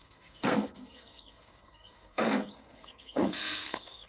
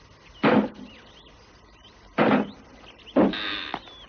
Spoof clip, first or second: first